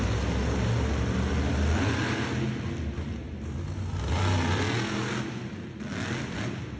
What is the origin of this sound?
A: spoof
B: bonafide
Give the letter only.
B